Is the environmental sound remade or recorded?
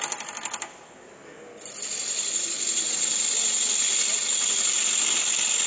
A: recorded